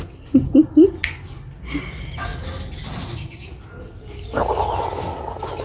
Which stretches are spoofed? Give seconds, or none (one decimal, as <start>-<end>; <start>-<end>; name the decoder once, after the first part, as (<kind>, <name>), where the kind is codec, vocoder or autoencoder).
none